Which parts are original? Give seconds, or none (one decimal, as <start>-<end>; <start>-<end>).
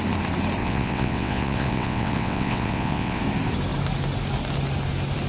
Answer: 0.0-0.6; 3.2-5.3